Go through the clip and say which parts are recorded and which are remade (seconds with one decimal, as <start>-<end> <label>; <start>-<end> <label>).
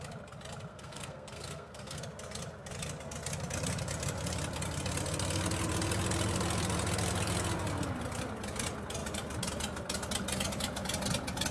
0.0-0.7 recorded; 0.7-2.0 remade; 2.0-11.5 recorded